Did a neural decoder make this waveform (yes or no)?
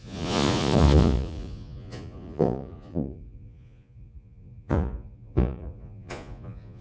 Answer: yes